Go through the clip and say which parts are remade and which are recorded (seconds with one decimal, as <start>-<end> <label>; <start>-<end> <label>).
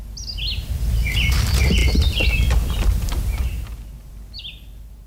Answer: 0.0-5.1 recorded